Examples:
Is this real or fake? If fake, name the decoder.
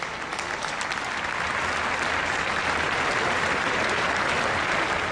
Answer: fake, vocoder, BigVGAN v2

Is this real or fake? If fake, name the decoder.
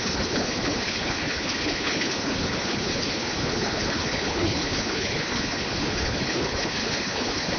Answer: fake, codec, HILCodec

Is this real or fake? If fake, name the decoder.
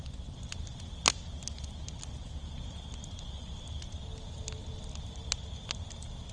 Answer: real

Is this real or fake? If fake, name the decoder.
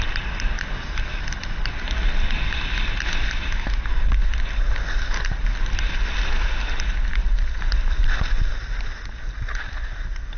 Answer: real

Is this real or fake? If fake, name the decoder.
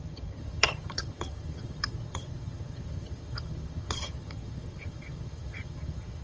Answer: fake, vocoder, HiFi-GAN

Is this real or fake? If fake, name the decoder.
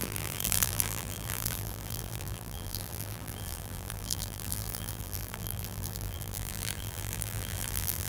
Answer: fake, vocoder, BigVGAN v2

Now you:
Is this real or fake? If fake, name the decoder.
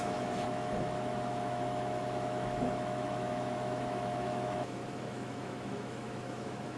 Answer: fake, autoencoder, DAC-VAE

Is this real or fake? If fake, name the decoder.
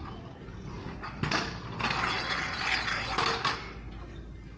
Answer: real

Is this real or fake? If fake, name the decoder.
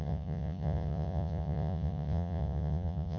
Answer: fake, vocoder, Vocos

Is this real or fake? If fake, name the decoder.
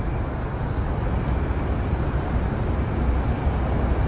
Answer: real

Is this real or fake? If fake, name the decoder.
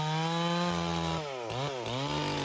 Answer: real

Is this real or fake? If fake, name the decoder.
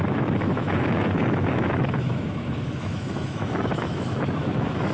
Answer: fake, autoencoder, DAC-VAE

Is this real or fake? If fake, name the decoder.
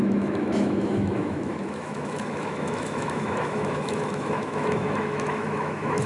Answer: fake, autoencoder, DAC-VAE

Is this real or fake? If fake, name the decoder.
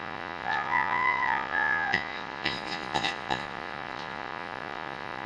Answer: fake, vocoder, Vocos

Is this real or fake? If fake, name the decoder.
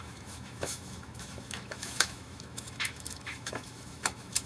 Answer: fake, autoencoder, DAC-VAE